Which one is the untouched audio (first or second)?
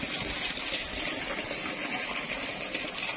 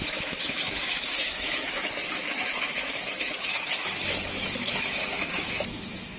first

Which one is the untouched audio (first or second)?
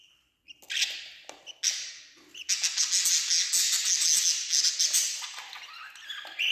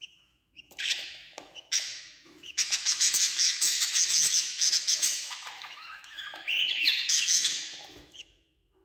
first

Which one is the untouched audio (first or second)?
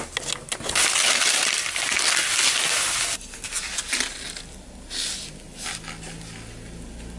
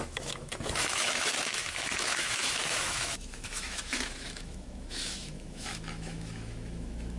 first